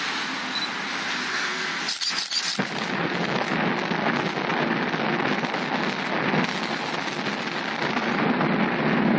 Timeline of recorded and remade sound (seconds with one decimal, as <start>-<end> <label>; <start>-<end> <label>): 0.0-1.3 recorded; 1.3-1.8 remade; 1.8-9.2 recorded